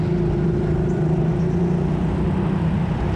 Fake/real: real